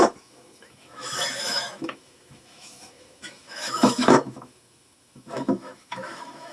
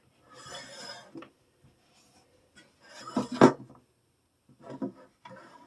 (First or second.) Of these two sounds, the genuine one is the second